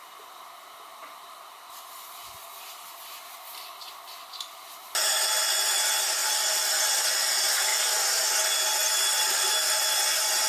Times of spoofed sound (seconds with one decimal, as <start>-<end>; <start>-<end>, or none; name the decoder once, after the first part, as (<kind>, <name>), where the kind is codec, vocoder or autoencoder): 6.2-7.2 (vocoder, BigVGAN v2); 7.7-8.3; 8.8-9.5